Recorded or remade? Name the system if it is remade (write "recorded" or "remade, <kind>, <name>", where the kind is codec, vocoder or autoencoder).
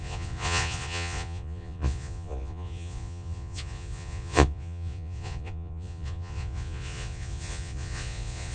remade, vocoder, Vocos